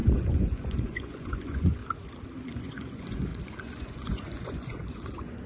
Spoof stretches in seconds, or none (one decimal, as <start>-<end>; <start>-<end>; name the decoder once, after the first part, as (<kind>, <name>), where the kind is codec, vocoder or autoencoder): 0.0-1.8 (vocoder, Vocos); 2.4-5.5